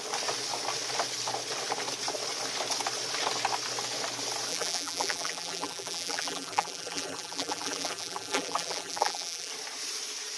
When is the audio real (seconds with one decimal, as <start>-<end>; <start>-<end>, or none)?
0.0-4.5; 9.5-10.4